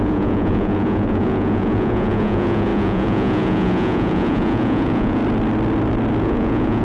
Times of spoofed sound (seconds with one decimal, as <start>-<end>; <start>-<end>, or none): 0.0-5.2; 6.2-6.8